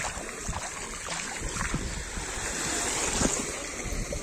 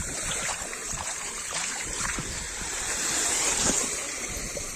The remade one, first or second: second